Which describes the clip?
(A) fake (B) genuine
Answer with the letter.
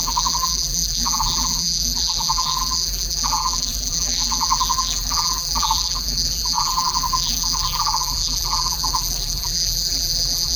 A